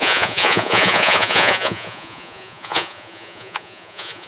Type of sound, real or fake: fake